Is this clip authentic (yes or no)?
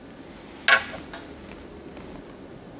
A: yes